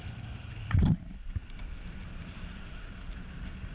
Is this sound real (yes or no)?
yes